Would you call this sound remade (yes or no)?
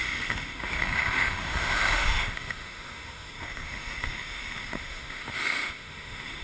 yes